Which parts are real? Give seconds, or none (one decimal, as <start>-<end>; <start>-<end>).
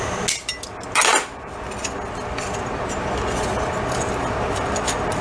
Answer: 0.0-5.2